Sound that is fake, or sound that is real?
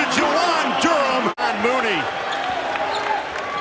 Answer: real